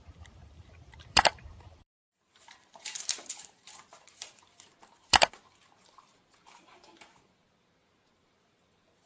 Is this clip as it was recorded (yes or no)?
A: no